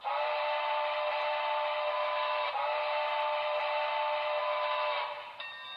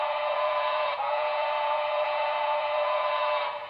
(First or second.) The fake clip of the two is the second